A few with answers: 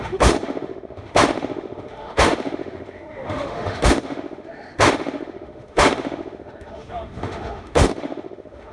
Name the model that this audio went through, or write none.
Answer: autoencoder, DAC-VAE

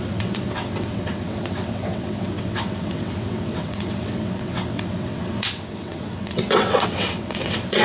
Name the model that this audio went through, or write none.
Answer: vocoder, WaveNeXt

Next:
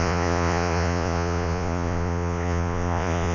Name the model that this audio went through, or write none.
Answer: vocoder, Vocos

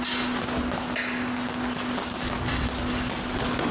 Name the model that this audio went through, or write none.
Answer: none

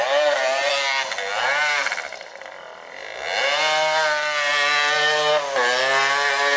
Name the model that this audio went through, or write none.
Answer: none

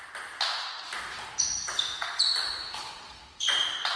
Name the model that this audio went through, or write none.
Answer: none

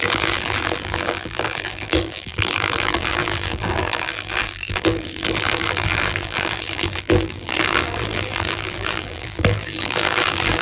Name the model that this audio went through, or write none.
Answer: vocoder, BigVGAN v2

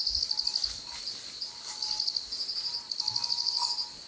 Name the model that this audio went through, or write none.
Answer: none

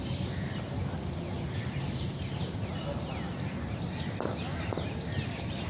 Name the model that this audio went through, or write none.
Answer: none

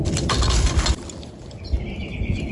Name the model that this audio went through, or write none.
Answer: none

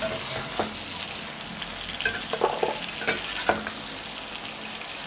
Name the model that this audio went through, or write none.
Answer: none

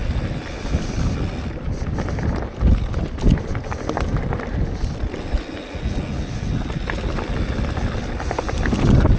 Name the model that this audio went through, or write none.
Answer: none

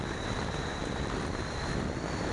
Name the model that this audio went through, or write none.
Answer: vocoder, BigVGAN v2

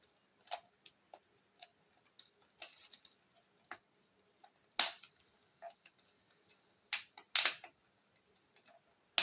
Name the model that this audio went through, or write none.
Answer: none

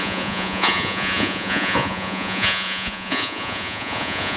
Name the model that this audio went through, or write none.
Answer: vocoder, Vocos